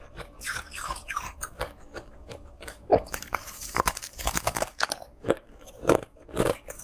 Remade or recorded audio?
remade